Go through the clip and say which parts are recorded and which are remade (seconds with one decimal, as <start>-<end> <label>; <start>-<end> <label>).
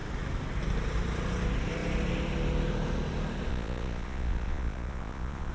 0.0-3.5 recorded; 3.5-5.5 remade